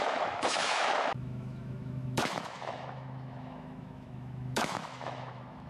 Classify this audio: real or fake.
fake